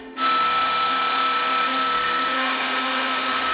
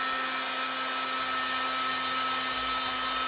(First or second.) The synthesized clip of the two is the first